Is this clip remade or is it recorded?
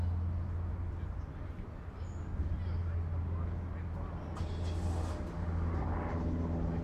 recorded